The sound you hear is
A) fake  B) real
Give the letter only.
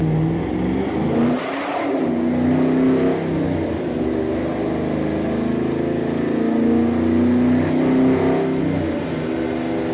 B